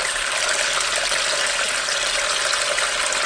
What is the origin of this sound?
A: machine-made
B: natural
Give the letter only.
B